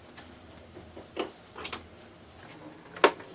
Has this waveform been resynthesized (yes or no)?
no